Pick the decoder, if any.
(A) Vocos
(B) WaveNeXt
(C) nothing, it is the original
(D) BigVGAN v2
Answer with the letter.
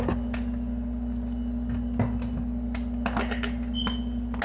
C